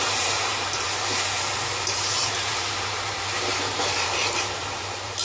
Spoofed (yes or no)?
yes